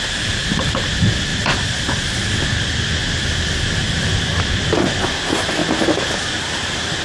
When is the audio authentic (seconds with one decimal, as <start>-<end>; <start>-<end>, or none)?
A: 0.0-1.3; 4.5-7.0